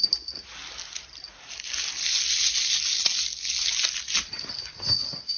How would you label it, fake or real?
real